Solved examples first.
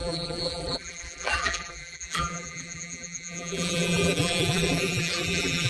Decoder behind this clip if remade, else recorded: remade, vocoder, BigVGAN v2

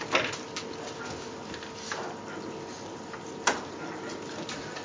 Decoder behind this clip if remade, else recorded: recorded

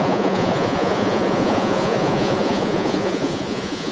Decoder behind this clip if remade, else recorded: remade, vocoder, Vocos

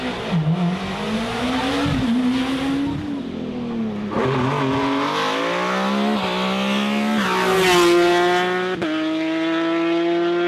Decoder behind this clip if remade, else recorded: recorded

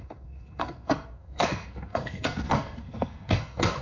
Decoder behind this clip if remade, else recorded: remade, codec, SNAC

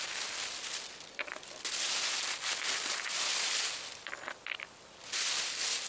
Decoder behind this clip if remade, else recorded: recorded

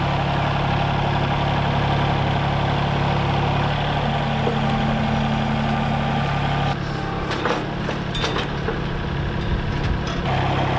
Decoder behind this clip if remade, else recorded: recorded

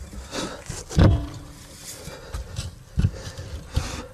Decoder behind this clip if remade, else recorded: recorded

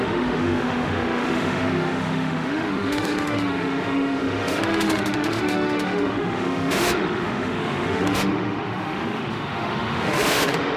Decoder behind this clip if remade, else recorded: remade, autoencoder, DAC-VAE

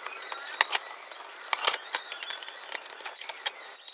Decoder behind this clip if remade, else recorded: recorded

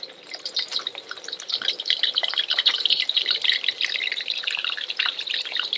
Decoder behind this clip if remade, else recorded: remade, vocoder, BigVGAN v2